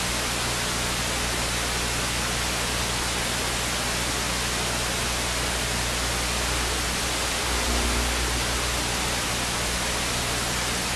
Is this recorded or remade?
recorded